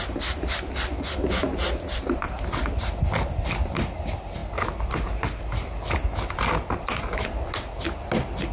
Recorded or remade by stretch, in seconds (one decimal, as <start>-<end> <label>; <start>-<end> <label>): 0.0-8.5 recorded